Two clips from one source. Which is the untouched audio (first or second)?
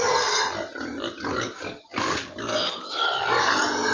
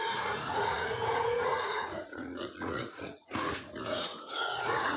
first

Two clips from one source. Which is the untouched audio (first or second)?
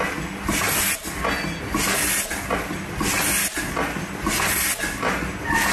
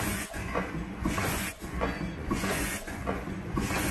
first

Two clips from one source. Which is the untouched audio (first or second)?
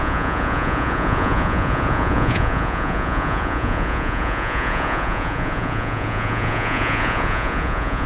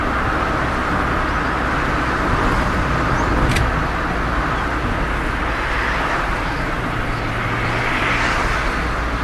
second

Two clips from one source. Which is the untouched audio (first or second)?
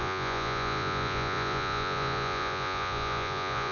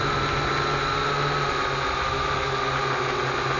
second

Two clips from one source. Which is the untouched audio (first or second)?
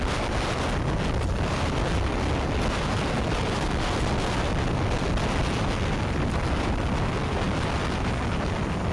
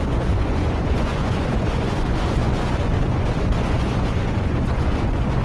first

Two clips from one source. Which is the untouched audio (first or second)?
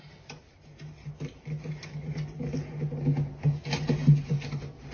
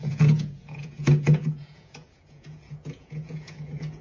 first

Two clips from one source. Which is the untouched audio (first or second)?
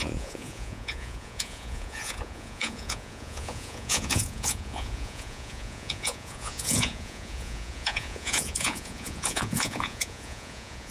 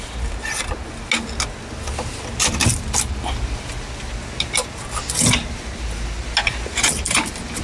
second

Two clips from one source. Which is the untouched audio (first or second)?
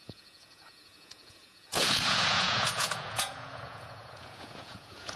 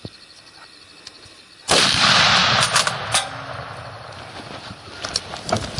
second